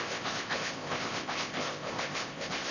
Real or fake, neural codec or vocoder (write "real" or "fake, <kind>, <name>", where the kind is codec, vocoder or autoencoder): fake, codec, ZipCodec